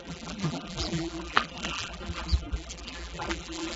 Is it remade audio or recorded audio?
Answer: remade